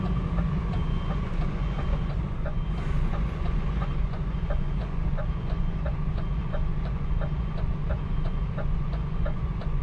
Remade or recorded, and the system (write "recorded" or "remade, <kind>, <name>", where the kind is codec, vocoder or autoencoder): remade, vocoder, Vocos